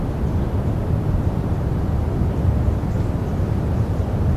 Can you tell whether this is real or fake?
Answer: real